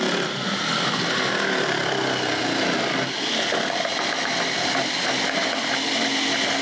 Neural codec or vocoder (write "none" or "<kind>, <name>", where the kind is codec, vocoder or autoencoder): none